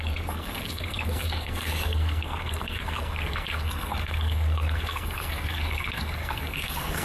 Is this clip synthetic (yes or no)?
yes